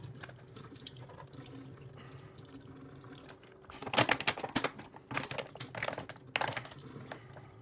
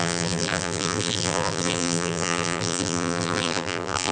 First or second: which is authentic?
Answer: first